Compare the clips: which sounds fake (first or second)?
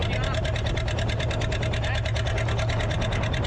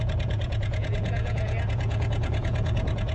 second